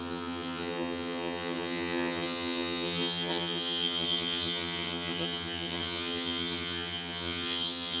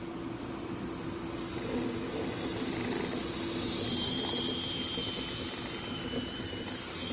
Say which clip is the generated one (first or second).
first